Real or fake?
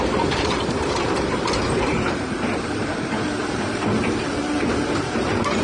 fake